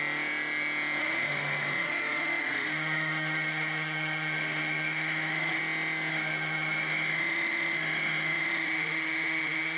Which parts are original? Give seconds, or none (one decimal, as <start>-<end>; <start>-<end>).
0.0-1.0; 5.6-6.1